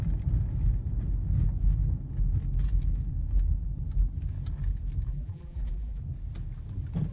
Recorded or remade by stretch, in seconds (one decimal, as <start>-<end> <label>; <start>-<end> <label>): 0.0-5.1 recorded; 5.1-6.0 remade; 6.0-7.1 recorded

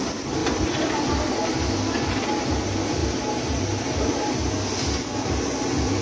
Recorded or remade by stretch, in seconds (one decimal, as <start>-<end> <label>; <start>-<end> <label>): 0.0-6.0 recorded